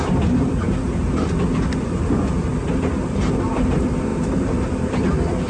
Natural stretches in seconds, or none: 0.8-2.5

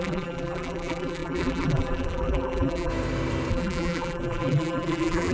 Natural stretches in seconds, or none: 2.9-3.5

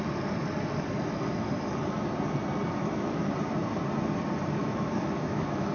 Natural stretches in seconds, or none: 0.0-2.8; 3.3-4.6

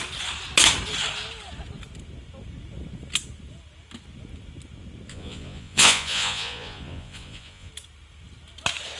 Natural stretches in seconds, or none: 0.0-5.1; 7.7-9.0

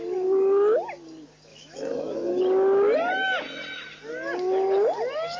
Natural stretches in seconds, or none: 0.0-1.5; 2.4-5.4

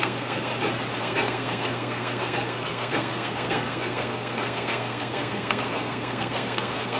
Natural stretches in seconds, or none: 0.5-1.0